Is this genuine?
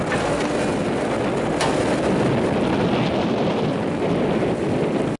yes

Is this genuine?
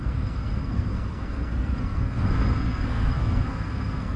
no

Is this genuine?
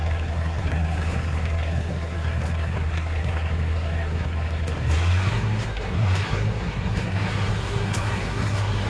no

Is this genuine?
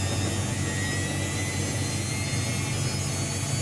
yes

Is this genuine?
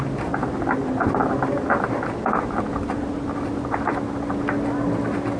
yes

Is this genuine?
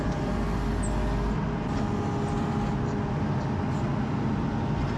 yes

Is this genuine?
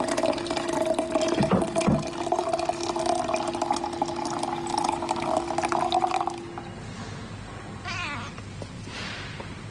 yes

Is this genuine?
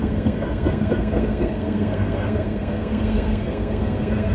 no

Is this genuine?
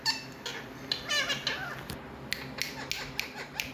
yes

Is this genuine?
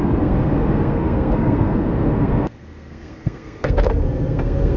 no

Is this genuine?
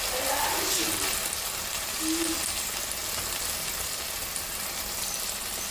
yes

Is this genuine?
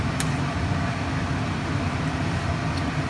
yes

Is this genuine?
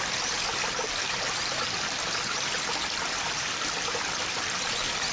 yes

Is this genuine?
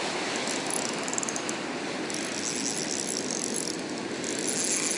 yes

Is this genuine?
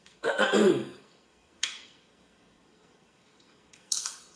no